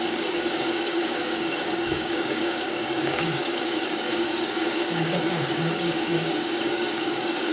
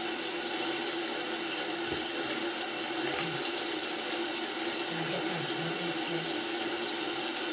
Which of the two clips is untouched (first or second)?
second